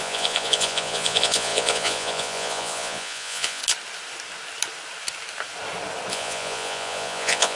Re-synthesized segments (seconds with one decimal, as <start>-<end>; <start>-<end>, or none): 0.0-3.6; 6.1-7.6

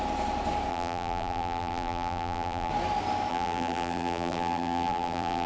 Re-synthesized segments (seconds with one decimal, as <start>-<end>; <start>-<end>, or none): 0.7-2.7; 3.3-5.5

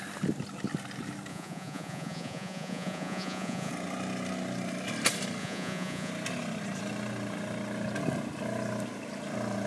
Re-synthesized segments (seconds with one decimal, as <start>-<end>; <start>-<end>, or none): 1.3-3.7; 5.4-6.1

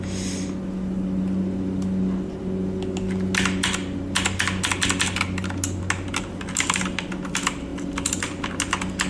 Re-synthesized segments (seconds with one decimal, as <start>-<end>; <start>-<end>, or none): none